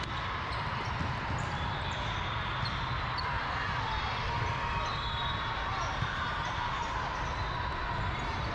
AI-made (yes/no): no